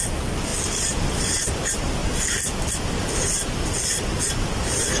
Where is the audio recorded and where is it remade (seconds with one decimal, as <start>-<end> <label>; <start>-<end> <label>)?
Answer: 0.0-5.0 recorded